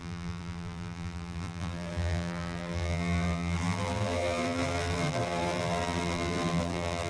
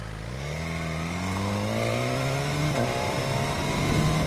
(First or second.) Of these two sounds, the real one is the second